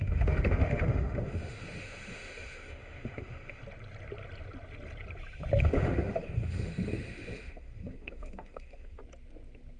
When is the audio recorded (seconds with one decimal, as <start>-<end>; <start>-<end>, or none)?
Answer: 3.6-5.6; 9.0-9.8